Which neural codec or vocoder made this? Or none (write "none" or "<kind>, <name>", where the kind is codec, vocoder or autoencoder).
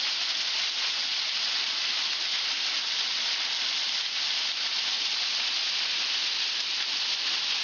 none